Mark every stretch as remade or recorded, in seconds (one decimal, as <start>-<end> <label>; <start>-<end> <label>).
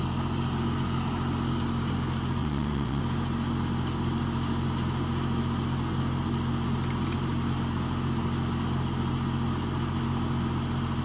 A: 0.0-2.4 recorded; 2.4-3.0 remade; 3.0-11.0 recorded